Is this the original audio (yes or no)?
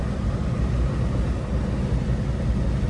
yes